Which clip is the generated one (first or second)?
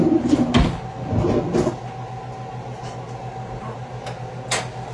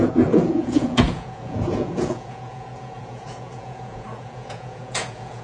second